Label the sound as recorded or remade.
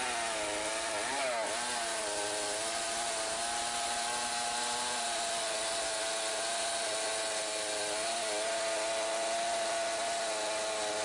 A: recorded